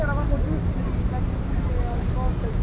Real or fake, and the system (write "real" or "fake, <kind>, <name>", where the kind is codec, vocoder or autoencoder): real